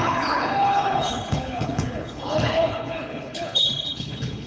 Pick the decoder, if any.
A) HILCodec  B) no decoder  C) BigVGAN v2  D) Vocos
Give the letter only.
A